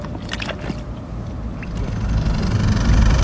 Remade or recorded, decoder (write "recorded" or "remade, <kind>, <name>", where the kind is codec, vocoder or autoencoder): recorded